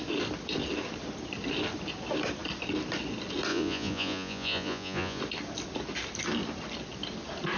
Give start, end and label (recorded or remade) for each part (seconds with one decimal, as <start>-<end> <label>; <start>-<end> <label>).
0.0-3.5 recorded; 3.5-5.2 remade; 5.2-7.6 recorded